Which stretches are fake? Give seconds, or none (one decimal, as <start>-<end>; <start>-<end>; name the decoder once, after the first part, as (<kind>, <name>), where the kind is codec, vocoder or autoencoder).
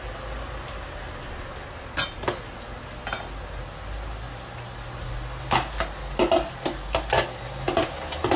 none